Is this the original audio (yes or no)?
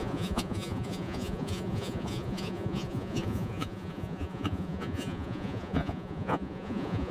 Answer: no